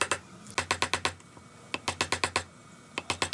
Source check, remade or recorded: recorded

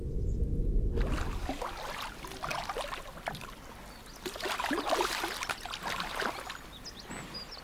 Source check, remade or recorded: recorded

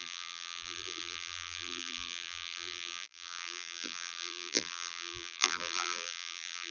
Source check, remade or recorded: remade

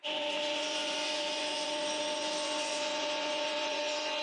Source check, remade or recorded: remade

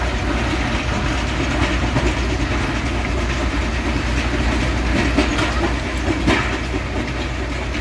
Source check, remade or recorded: recorded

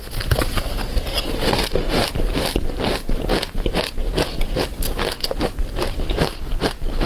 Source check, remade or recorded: recorded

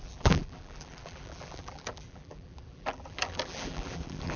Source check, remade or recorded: remade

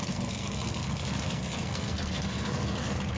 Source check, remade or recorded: remade